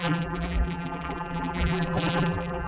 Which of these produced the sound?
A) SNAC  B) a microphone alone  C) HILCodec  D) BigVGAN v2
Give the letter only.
D